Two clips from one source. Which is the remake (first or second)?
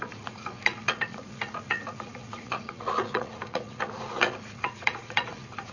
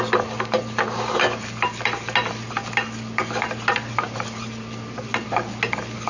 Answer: first